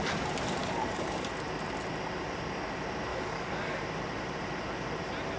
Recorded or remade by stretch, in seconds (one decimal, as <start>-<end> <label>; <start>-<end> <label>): 0.0-0.6 recorded; 0.6-1.3 remade; 1.3-3.1 recorded; 3.1-3.8 remade; 3.8-5.4 recorded